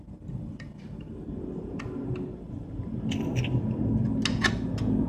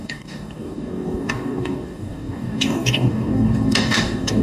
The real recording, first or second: first